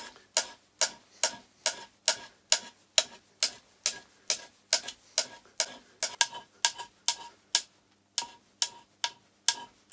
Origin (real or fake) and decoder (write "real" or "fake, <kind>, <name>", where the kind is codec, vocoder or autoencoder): real